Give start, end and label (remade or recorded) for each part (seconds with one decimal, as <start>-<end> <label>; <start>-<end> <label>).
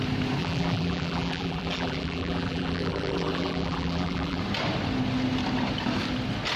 0.0-0.4 recorded; 0.4-4.4 remade; 4.4-6.6 recorded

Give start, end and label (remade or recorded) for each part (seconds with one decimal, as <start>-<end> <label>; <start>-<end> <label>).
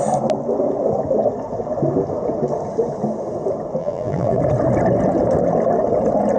0.0-3.8 recorded; 3.8-4.4 remade; 4.4-6.4 recorded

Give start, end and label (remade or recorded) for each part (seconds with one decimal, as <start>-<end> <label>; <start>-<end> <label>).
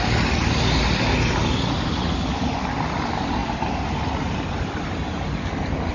0.0-5.9 recorded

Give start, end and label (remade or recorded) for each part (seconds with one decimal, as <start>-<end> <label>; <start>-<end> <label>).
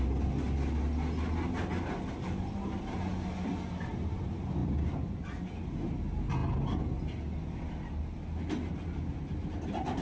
0.0-10.0 recorded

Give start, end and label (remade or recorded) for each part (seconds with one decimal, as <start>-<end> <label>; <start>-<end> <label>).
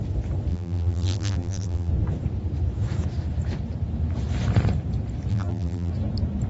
0.0-0.5 recorded; 0.5-1.9 remade; 1.9-5.3 recorded; 5.3-5.9 remade; 5.9-6.5 recorded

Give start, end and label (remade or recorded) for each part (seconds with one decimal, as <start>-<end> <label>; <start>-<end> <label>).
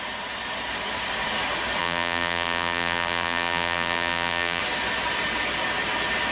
0.0-1.8 recorded; 1.8-4.6 remade; 4.6-6.3 recorded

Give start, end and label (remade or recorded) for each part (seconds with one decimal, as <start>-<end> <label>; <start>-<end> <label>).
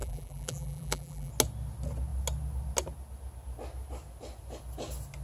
0.0-1.3 remade; 1.3-5.2 recorded